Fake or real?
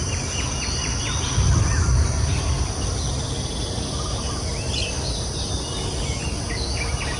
real